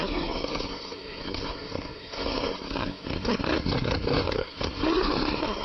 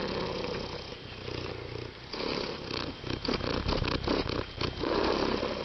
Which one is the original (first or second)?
second